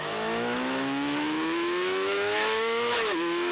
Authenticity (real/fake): fake